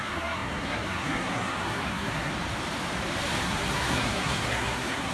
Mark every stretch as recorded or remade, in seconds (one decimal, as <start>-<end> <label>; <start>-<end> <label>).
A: 0.0-2.3 remade; 2.3-3.4 recorded; 3.4-5.1 remade